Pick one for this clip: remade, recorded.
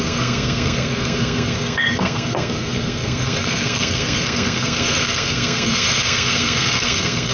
remade